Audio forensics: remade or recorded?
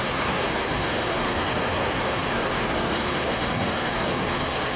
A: remade